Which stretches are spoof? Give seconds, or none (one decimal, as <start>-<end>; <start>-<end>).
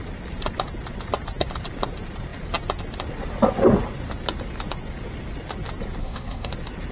6.0-6.5